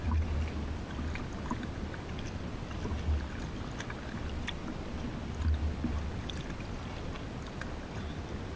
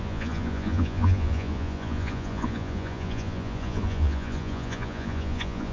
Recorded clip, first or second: first